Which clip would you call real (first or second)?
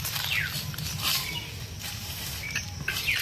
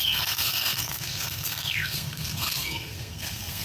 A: first